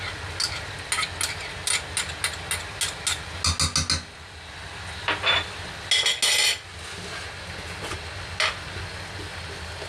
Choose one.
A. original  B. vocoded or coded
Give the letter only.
A